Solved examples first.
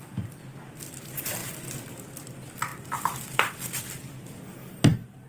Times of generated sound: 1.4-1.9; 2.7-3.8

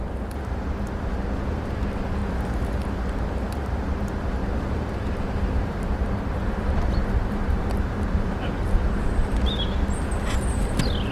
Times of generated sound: 4.4-5.8; 6.4-9.0